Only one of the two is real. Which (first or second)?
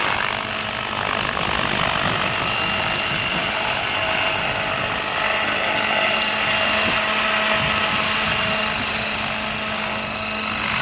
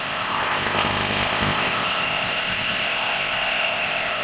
first